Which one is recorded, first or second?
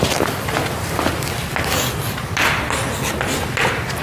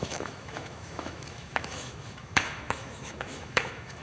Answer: first